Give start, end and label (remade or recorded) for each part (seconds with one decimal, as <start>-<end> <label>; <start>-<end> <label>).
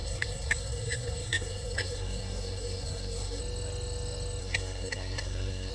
0.0-3.4 remade; 3.4-4.4 recorded; 4.4-5.7 remade